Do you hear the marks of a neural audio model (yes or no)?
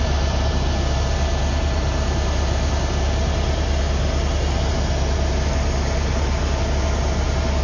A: no